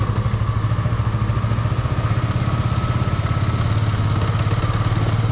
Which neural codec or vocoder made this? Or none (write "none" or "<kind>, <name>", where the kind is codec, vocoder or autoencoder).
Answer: none